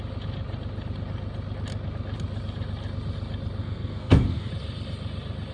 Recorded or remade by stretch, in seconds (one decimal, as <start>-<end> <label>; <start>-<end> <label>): 0.0-3.6 recorded; 3.6-4.5 remade; 4.5-5.5 recorded